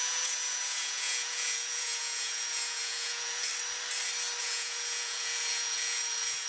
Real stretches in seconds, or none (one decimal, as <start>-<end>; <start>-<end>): 3.5-4.4